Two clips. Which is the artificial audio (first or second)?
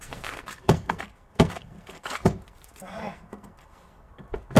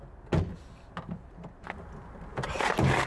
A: first